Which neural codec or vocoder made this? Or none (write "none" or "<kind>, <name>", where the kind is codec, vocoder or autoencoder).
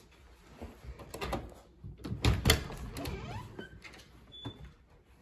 none